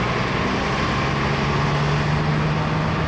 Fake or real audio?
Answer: real